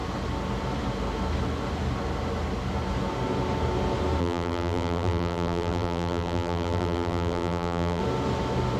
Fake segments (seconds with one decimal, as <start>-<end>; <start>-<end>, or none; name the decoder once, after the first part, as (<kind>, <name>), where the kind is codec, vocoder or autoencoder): 4.2-8.0 (vocoder, BigVGAN v2)

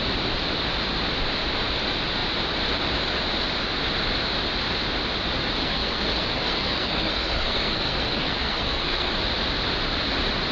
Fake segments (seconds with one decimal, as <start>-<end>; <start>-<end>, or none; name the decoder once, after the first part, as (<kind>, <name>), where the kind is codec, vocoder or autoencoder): 5.6-9.1 (codec, SNAC)

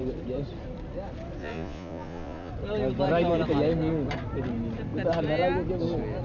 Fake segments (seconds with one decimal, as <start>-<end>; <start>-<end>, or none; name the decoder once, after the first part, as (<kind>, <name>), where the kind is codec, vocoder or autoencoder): 1.4-2.5 (vocoder, Vocos)